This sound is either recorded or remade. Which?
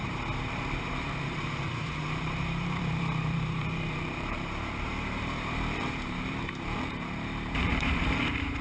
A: remade